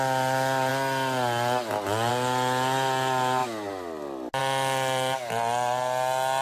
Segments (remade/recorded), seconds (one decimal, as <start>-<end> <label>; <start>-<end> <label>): 0.0-6.4 recorded